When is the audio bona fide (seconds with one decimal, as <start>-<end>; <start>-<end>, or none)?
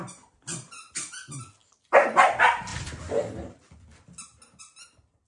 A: 0.0-1.6; 2.3-5.3